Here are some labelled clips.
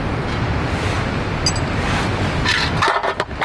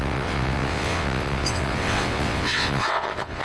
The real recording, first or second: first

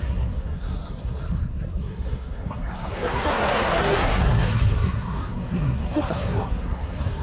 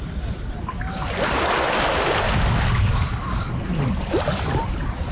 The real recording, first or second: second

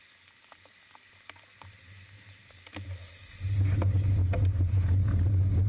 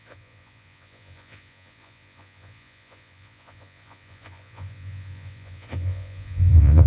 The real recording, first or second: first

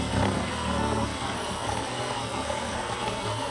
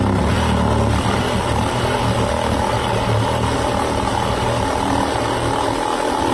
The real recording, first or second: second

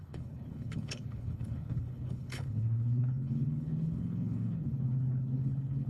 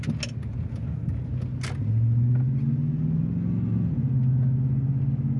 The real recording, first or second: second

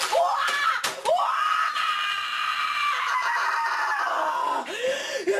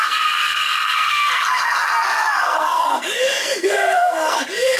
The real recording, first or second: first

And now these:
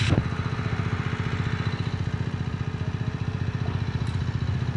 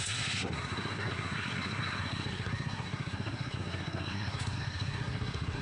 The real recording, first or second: first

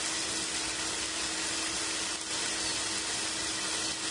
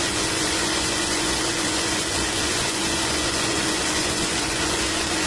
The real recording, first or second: first